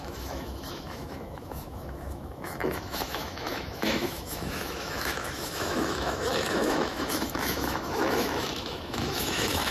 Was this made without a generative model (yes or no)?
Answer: no